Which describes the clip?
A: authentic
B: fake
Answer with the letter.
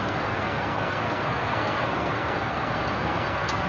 B